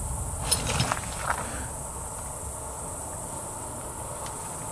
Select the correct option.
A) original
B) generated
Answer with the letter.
A